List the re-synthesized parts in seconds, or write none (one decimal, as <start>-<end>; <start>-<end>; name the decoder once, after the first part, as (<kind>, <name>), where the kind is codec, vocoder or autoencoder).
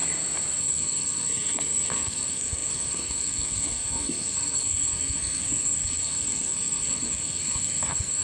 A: 0.6-8.2 (codec, SNAC)